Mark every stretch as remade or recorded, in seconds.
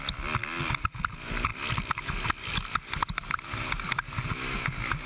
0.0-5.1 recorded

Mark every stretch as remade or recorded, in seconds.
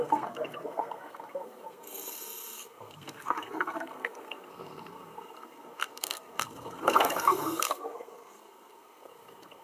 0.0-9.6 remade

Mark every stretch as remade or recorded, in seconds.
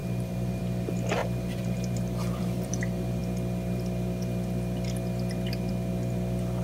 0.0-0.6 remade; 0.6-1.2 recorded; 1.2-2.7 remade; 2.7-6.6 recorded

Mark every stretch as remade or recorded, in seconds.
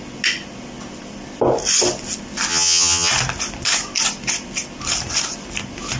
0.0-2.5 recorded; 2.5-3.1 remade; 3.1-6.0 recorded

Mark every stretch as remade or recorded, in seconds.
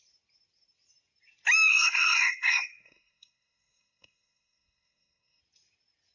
0.0-1.7 recorded; 1.7-5.4 remade; 5.4-6.1 recorded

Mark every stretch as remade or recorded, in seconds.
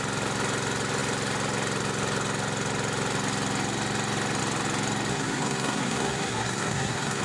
0.0-5.1 recorded; 5.1-7.2 remade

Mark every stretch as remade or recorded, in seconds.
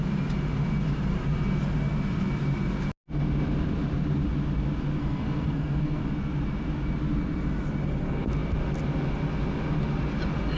0.0-5.0 recorded; 5.0-6.0 remade; 6.0-10.6 recorded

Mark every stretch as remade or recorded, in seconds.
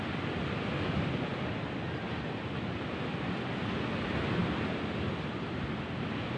0.0-6.4 recorded